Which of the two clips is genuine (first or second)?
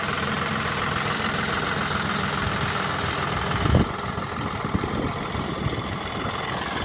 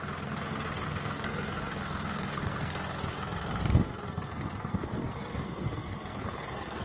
first